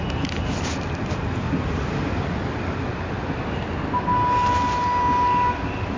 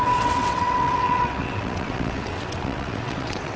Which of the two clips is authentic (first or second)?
first